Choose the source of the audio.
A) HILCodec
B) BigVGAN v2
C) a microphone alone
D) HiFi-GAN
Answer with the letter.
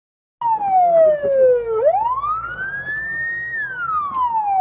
C